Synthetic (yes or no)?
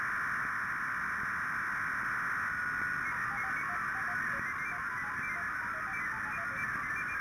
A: no